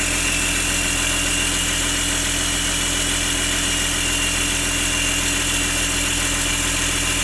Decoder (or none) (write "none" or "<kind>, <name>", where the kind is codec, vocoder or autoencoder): none